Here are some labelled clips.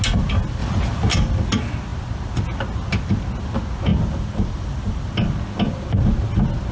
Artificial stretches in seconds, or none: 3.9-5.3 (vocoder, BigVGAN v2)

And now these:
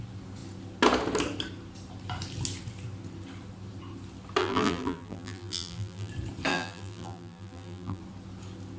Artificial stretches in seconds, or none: 4.4-6.1 (vocoder, BigVGAN v2); 6.5-8.0

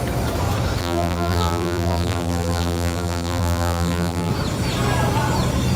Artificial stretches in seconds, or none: 0.8-4.3 (vocoder, BigVGAN v2)